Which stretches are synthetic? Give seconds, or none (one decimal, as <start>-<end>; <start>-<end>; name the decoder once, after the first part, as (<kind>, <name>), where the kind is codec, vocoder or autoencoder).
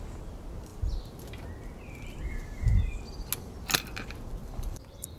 4.4-5.2 (vocoder, BigVGAN v2)